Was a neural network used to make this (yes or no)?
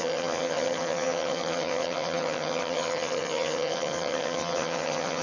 yes